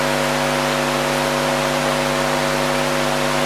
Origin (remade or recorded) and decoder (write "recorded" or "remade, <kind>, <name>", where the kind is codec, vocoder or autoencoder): recorded